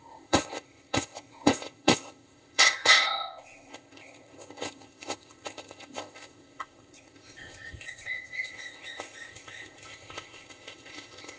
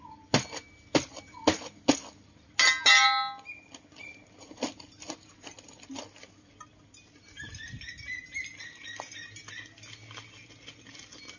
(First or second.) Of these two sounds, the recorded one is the second